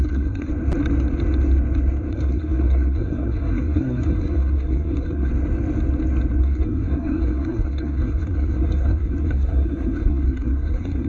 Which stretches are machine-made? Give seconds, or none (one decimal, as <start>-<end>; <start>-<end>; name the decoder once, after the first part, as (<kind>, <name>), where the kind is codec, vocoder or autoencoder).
0.0-0.5 (codec, SNAC); 2.1-5.3; 6.4-11.1